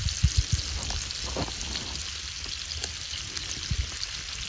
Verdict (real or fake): real